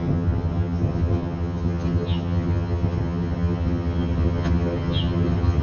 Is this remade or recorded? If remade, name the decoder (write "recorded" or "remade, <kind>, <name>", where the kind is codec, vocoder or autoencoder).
remade, vocoder, HiFi-GAN